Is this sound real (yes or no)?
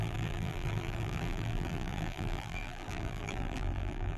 no